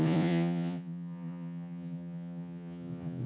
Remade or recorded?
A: remade